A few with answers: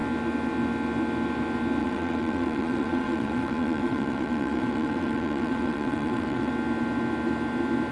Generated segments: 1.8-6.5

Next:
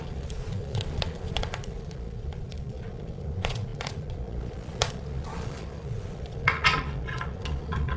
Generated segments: 0.0-8.0